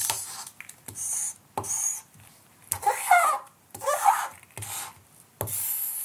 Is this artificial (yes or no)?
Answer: no